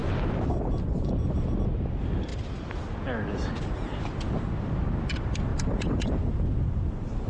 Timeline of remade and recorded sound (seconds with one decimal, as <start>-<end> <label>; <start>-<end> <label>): 0.0-2.3 recorded; 2.3-2.9 remade; 2.9-5.5 recorded; 5.5-6.5 remade; 6.5-7.3 recorded